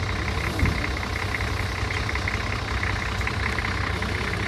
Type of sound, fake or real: real